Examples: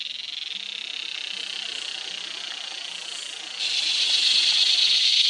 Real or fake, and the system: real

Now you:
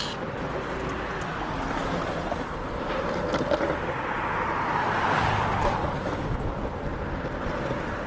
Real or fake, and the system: real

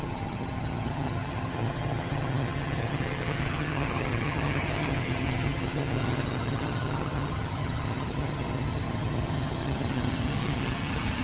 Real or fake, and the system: fake, vocoder, HiFi-GAN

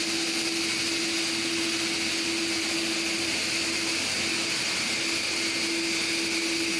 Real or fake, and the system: real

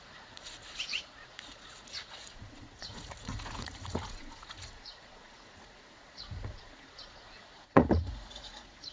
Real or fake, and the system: fake, vocoder, Vocos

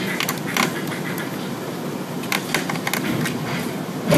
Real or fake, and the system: real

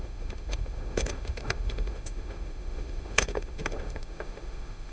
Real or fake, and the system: fake, autoencoder, DAC-VAE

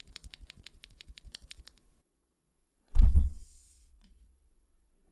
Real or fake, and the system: fake, vocoder, Vocos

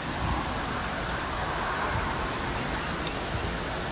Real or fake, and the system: real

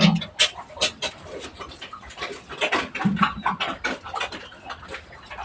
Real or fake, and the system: real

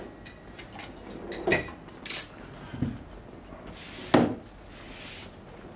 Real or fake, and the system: real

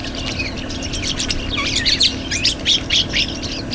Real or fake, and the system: fake, vocoder, BigVGAN v2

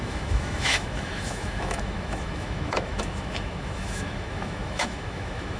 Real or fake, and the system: fake, autoencoder, DAC-VAE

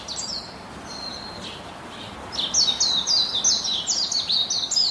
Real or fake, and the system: real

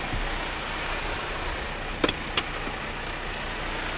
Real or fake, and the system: real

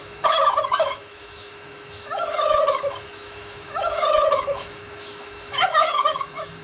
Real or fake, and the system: fake, autoencoder, DAC-VAE